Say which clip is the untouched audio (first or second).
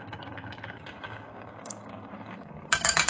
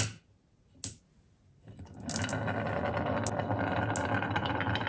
second